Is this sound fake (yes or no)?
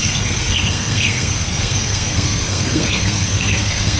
yes